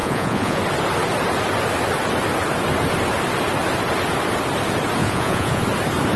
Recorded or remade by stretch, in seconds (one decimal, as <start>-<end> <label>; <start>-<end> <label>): 0.0-0.6 remade; 0.6-5.0 recorded; 5.0-5.6 remade; 5.6-6.2 recorded